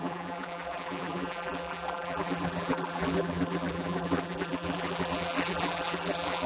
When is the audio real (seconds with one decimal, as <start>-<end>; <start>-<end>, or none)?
none